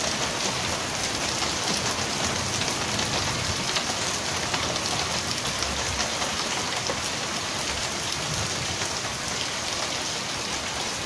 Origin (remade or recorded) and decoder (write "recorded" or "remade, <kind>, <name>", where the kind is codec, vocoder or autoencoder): recorded